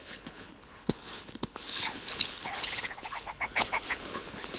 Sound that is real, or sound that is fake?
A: fake